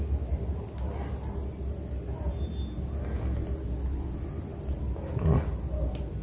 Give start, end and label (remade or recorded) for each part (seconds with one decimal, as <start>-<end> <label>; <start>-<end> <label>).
0.0-6.2 recorded